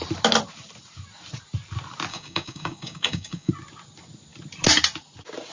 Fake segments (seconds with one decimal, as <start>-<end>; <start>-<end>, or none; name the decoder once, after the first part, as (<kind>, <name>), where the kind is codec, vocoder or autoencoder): 2.1-3.5 (codec, DAC)